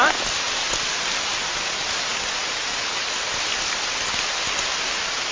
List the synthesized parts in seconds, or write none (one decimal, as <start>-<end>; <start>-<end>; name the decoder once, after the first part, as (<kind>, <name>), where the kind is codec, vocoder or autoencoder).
none